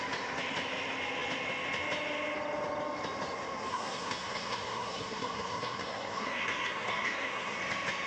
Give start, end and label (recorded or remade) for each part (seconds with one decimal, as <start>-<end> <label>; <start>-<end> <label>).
0.0-3.7 recorded; 3.7-7.6 remade; 7.6-8.1 recorded